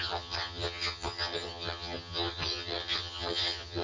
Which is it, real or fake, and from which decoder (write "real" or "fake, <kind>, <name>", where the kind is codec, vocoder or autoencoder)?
fake, vocoder, HiFi-GAN